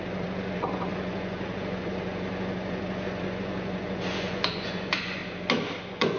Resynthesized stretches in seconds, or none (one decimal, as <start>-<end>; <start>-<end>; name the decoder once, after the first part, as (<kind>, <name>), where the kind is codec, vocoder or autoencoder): 0.0-5.2 (vocoder, Vocos); 5.8-6.2